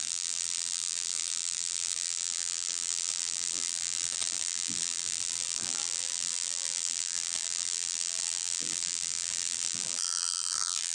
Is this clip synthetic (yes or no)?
yes